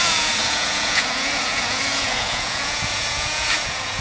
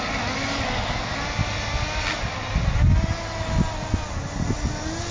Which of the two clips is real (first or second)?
second